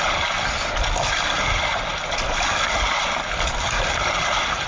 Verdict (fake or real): real